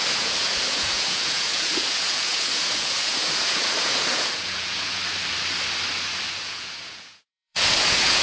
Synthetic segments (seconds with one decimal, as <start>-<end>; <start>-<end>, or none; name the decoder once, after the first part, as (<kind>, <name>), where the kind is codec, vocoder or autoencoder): 0.0-5.0 (vocoder, Vocos); 6.4-8.2